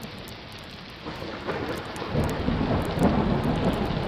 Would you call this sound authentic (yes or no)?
yes